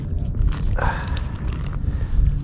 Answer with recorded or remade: recorded